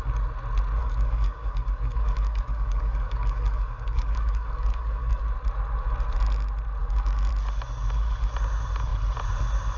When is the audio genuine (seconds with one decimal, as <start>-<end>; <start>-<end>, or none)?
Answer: 0.0-0.8; 5.2-6.8; 7.3-9.8

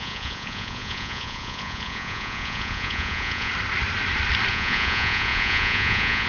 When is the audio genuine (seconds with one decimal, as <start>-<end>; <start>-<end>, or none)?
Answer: 3.5-4.5

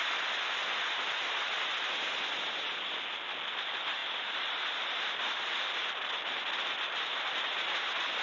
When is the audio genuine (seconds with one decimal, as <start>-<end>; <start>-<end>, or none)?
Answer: 0.0-8.2

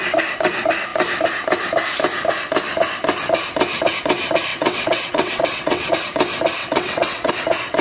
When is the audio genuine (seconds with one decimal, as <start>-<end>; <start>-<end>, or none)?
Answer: 0.0-4.5; 5.9-6.6; 7.3-7.8

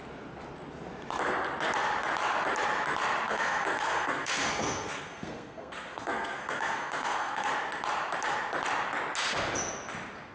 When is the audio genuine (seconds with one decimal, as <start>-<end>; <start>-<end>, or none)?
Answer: 0.0-3.3; 7.5-10.3

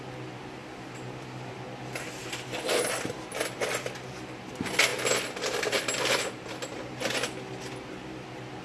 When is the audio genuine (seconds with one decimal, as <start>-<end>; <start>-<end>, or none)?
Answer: 0.0-4.9; 5.6-8.6

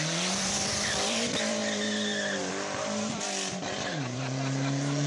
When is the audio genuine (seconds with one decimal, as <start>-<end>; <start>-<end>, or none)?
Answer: 1.6-2.5